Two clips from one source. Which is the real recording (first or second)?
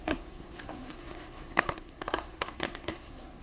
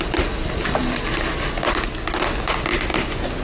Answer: second